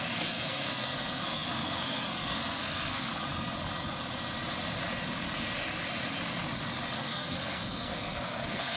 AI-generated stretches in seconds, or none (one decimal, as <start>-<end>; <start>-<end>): 0.0-3.1; 7.0-8.8